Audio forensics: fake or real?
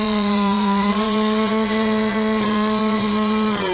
fake